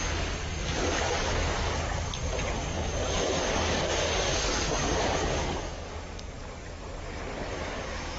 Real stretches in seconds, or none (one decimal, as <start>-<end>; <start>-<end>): 6.4-7.5

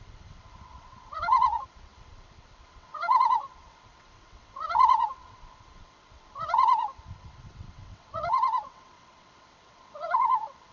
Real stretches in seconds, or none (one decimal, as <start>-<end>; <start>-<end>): none

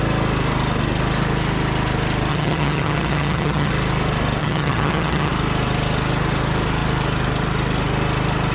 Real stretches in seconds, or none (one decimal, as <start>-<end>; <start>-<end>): 0.0-2.3; 3.7-4.4; 5.3-8.5

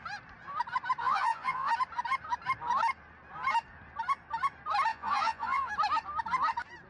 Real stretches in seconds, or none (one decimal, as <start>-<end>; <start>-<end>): 0.0-1.0; 1.7-4.9; 5.7-6.9

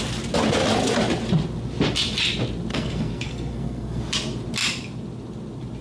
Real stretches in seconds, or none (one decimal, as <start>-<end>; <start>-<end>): 0.0-2.7; 4.0-5.8

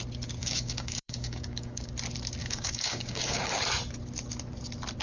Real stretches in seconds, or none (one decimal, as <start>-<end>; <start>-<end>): 0.0-0.4; 1.9-2.4; 3.6-5.0

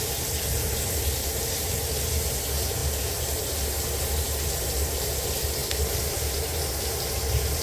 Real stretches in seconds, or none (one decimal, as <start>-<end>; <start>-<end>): 0.0-7.6